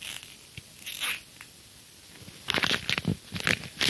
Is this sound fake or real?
real